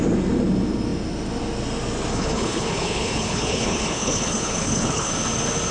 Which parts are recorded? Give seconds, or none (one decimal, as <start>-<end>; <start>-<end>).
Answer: 0.0-2.1; 5.1-5.7